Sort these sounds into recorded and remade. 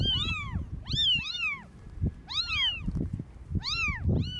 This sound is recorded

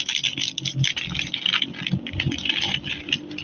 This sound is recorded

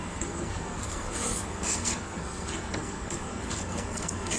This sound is remade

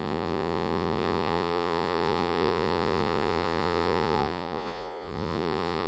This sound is remade